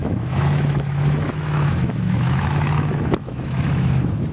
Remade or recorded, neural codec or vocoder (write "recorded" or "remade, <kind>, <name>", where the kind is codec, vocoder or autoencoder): remade, autoencoder, DAC-VAE